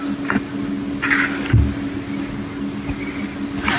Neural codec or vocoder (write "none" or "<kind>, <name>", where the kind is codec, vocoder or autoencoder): none